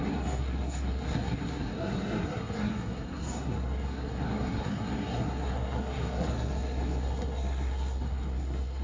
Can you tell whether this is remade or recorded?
remade